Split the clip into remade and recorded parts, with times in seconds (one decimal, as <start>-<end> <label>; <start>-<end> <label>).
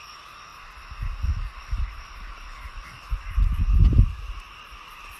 0.0-5.2 recorded